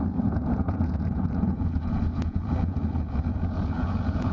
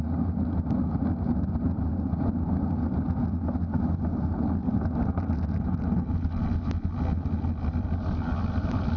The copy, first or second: first